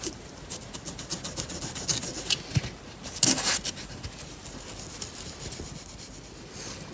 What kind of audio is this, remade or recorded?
recorded